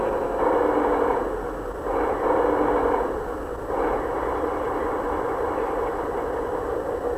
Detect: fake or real real